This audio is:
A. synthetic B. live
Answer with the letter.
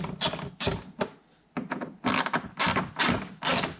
B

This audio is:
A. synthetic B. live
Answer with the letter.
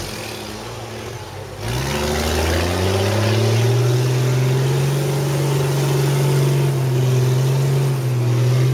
B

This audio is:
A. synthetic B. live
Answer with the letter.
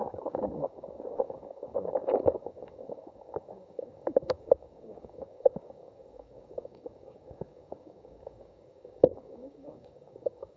A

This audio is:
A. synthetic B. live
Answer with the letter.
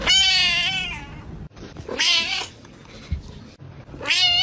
B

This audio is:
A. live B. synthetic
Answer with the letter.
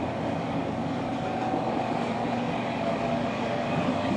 B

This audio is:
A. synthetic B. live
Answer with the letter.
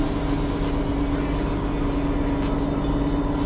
B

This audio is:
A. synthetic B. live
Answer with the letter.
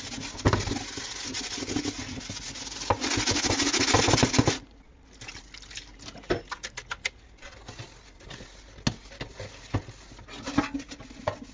B